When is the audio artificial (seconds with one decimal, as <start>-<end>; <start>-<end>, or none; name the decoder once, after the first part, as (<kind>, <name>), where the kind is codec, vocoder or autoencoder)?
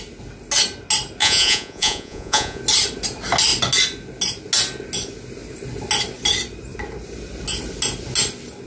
1.2-2.6 (vocoder, Vocos)